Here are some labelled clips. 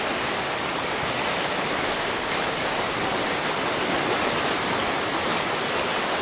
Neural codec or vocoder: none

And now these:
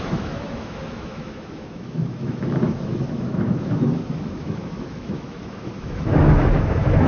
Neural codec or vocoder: autoencoder, DAC-VAE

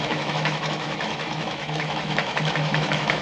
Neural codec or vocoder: autoencoder, DAC-VAE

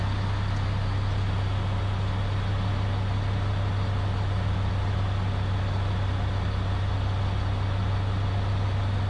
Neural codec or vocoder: none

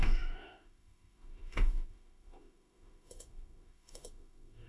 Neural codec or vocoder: autoencoder, DAC-VAE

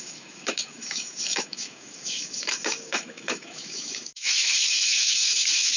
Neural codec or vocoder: autoencoder, DAC-VAE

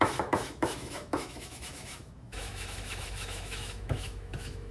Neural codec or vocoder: autoencoder, DAC-VAE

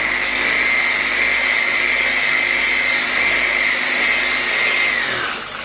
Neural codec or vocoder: none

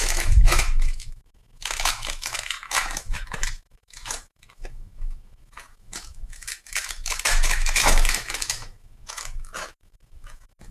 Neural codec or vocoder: autoencoder, DAC-VAE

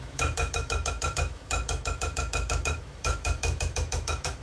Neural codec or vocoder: autoencoder, DAC-VAE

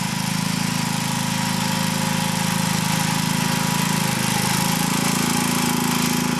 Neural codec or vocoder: none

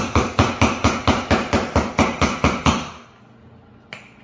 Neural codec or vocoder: none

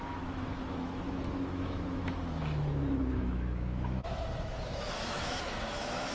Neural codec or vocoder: autoencoder, DAC-VAE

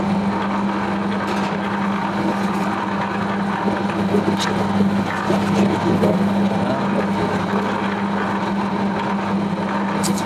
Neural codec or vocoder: none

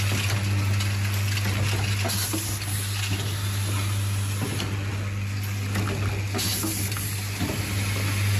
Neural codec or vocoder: none